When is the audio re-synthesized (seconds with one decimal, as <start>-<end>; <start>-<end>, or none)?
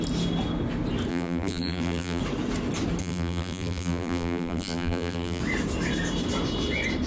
1.1-2.2; 3.0-5.4